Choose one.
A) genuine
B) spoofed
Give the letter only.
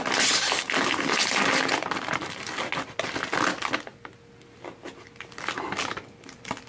A